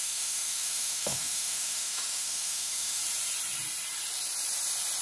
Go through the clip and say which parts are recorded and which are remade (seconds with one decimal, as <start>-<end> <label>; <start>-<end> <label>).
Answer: 0.0-3.0 remade; 3.0-5.0 recorded